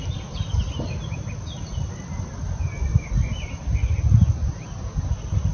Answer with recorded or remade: recorded